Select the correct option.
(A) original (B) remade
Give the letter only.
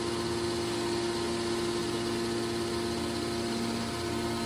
A